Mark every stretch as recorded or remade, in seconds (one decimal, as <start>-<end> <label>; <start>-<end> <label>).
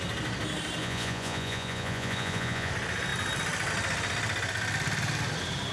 0.0-0.8 recorded; 0.8-2.7 remade; 2.7-5.7 recorded